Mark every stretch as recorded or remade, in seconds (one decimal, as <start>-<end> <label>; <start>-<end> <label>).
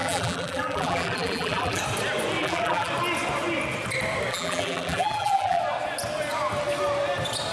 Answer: 0.0-1.8 remade; 1.8-2.4 recorded; 2.4-2.9 remade; 2.9-4.3 recorded; 4.3-5.6 remade; 5.6-7.5 recorded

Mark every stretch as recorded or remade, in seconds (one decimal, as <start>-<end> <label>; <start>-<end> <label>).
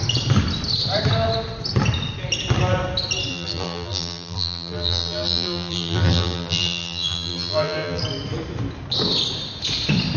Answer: 0.0-3.3 recorded; 3.3-8.0 remade; 8.0-10.2 recorded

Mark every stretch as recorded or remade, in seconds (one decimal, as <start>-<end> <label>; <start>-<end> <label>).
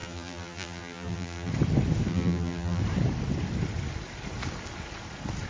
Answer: 0.0-1.5 remade; 1.5-2.1 recorded; 2.1-2.8 remade; 2.8-5.5 recorded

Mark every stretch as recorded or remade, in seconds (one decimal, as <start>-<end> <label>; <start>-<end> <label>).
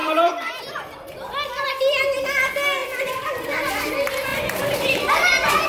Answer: 0.0-0.6 remade; 0.6-2.8 recorded; 2.8-3.7 remade; 3.7-4.3 recorded; 4.3-5.7 remade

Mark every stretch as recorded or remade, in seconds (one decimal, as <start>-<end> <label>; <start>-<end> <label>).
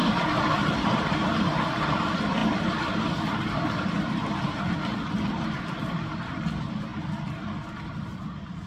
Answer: 0.0-1.0 remade; 1.0-2.4 recorded; 2.4-6.4 remade; 6.4-8.7 recorded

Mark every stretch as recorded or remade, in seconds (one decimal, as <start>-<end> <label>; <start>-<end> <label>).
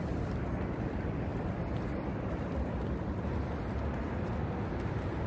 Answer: 0.0-5.3 recorded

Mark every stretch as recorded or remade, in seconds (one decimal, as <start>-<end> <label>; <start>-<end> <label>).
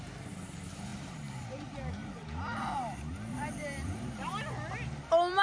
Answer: 0.0-0.9 recorded; 0.9-1.4 remade; 1.4-2.0 recorded; 2.0-4.0 remade; 4.0-5.4 recorded